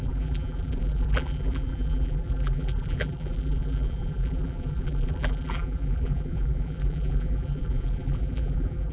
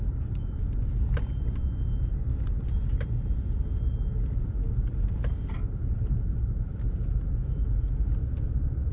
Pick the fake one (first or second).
first